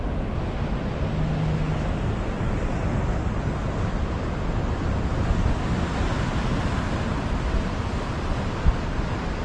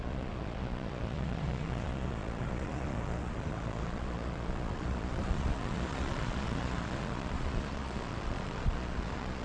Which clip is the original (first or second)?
first